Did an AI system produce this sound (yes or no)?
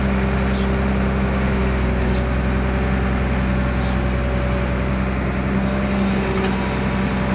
no